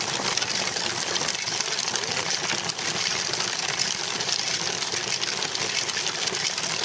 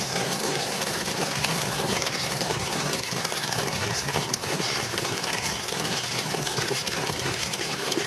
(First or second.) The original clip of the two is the first